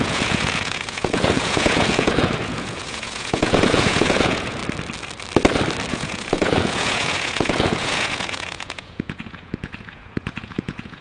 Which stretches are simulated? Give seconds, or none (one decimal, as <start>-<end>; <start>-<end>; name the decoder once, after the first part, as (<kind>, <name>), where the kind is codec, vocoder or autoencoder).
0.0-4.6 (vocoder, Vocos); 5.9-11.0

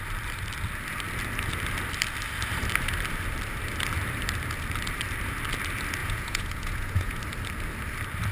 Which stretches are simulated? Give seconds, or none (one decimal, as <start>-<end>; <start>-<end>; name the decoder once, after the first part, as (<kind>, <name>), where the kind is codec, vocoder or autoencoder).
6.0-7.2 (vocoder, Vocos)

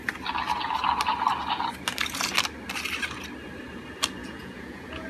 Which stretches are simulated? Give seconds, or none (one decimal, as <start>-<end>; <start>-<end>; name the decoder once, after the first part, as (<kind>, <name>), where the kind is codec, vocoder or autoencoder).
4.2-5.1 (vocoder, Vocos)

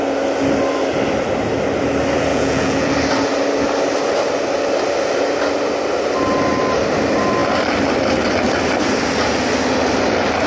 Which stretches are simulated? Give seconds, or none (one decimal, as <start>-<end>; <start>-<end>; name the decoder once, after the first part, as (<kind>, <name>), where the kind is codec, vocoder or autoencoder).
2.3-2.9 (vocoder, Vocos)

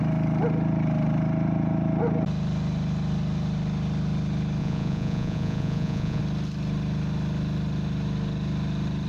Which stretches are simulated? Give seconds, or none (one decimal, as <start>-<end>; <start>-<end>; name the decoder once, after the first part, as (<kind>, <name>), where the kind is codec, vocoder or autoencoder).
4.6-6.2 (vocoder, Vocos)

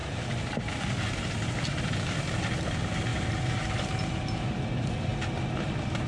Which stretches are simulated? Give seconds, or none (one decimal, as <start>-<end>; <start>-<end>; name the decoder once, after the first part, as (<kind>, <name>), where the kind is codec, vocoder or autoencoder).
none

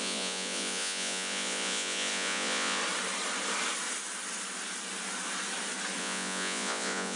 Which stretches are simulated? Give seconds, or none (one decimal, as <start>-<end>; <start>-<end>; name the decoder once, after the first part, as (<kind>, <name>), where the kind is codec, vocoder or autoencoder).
0.0-2.8 (vocoder, Vocos); 6.0-7.2